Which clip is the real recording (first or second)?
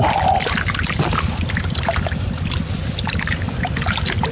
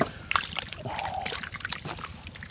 first